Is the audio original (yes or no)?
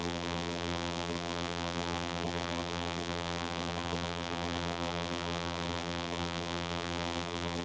no